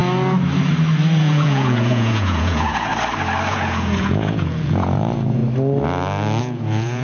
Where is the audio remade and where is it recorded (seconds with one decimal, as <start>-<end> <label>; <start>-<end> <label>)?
0.0-1.2 recorded; 1.2-2.9 remade; 2.9-3.5 recorded; 3.5-5.4 remade; 5.4-6.4 recorded; 6.4-7.0 remade